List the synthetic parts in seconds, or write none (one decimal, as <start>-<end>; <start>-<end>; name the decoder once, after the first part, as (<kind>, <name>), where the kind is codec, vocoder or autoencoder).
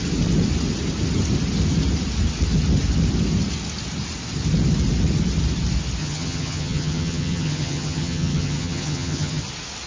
6.0-9.4 (vocoder, HiFi-GAN)